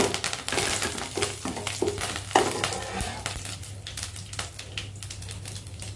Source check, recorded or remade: recorded